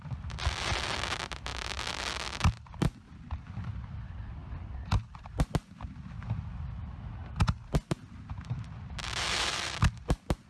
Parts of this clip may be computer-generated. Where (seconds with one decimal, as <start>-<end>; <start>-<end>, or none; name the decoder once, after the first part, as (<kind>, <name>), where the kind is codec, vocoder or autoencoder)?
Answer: 4.4-5.0 (vocoder, BigVGAN v2)